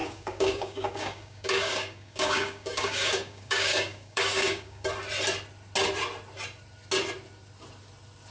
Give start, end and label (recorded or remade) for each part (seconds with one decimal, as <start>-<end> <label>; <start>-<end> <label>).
0.0-4.9 remade; 4.9-8.3 recorded